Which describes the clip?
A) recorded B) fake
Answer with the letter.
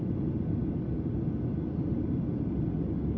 A